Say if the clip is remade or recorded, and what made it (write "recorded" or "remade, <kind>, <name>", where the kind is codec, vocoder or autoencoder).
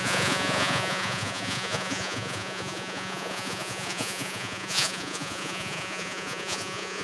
remade, vocoder, Vocos